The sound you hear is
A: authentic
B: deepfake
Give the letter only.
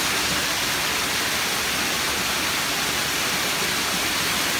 A